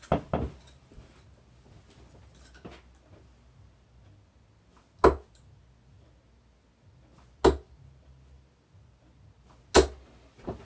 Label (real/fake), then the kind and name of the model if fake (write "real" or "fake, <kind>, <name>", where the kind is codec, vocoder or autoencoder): real